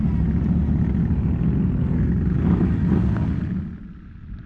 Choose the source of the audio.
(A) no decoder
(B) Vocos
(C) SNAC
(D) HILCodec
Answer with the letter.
A